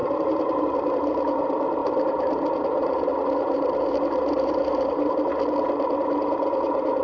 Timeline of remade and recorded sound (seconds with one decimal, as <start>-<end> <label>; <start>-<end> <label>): 0.0-0.6 remade; 0.6-1.8 recorded; 1.8-5.1 remade; 5.1-7.0 recorded